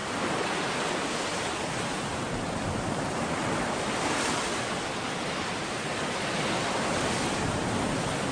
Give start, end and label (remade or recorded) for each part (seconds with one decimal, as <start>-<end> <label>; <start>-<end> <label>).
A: 0.0-8.3 recorded